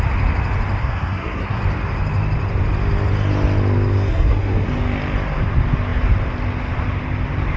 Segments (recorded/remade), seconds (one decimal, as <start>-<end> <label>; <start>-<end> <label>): 0.0-0.8 recorded; 0.8-1.6 remade; 1.6-4.1 recorded; 4.1-4.7 remade; 4.7-7.6 recorded